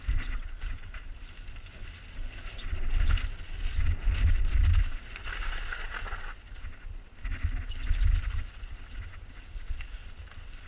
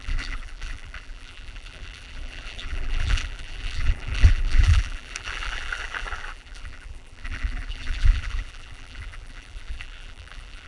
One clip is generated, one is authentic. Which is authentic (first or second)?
first